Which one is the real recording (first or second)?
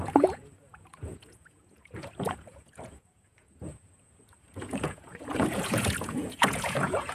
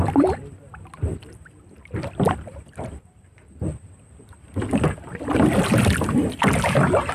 second